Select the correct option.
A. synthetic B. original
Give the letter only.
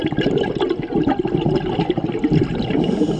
B